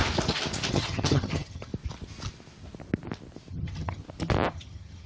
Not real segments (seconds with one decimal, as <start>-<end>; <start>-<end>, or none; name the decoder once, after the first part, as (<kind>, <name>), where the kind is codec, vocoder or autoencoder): 0.7-1.7 (vocoder, HiFi-GAN); 3.5-4.0; 4.5-5.1

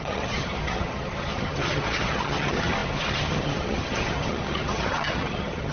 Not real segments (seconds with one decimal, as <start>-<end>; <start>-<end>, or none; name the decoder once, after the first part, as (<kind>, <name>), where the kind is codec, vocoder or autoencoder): 0.0-5.7 (vocoder, HiFi-GAN)

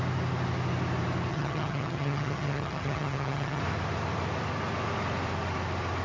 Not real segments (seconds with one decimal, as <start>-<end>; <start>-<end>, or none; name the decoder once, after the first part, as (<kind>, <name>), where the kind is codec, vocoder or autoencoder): 1.3-3.6 (vocoder, HiFi-GAN)

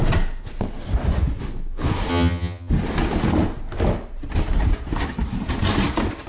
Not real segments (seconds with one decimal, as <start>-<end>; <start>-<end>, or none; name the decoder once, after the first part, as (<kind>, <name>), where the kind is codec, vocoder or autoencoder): 2.1-2.7 (vocoder, HiFi-GAN)

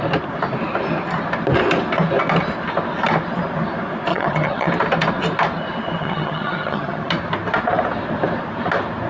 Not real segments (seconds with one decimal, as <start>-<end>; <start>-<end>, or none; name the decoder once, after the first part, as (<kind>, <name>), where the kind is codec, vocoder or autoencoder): 4.1-4.7 (vocoder, HiFi-GAN); 6.0-7.1

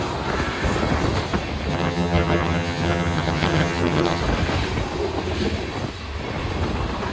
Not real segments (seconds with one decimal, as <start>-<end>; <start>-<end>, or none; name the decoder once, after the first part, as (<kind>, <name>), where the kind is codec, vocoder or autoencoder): 1.7-4.2 (vocoder, HiFi-GAN)

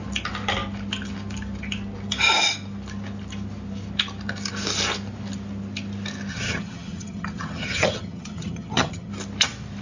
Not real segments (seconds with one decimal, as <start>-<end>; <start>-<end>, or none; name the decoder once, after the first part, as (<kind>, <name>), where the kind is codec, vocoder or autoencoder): 6.3-9.1 (vocoder, HiFi-GAN)